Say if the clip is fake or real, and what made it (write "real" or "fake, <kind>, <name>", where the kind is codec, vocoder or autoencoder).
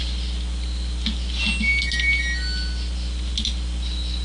real